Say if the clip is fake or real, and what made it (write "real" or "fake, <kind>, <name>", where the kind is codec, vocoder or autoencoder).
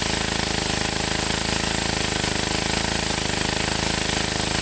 real